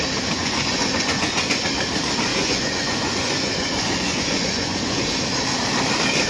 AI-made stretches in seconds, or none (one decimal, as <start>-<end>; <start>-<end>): 0.4-1.4; 2.3-5.1